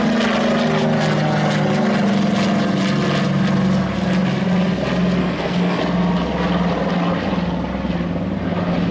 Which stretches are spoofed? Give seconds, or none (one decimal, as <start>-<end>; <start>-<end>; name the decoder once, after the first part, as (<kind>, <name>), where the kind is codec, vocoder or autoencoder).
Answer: 5.2-5.8 (codec, SNAC)